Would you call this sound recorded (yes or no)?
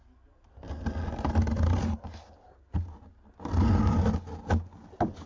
yes